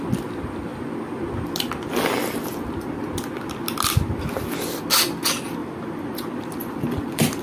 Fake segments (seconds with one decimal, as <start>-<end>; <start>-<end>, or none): 5.6-7.4